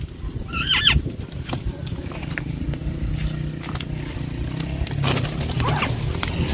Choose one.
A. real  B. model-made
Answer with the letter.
A